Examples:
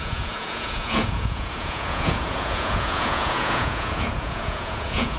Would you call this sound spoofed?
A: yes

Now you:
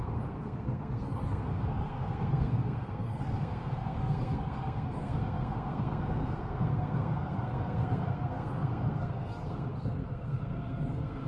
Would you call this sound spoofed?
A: yes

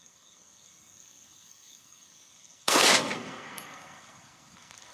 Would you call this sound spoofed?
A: yes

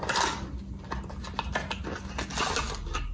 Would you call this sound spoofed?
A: no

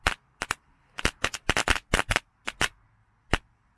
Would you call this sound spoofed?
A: no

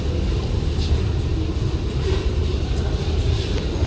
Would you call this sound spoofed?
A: no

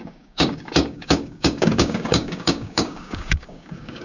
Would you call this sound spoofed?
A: yes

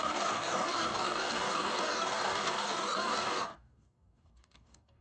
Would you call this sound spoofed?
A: yes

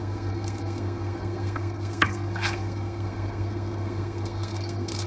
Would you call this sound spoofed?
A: yes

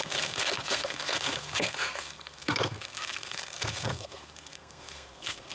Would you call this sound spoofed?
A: yes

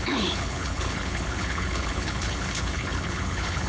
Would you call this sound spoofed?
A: yes